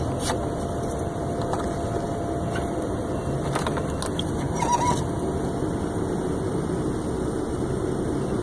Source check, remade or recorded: recorded